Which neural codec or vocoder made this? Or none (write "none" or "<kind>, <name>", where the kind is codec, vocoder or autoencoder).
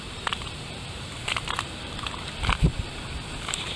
vocoder, BigVGAN v2